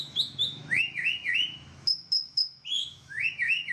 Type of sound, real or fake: fake